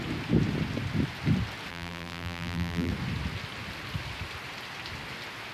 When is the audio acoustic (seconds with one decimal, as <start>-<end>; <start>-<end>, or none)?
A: 0.0-1.7; 2.9-5.5